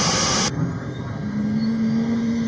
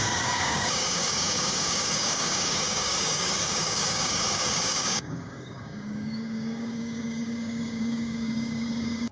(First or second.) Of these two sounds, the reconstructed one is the second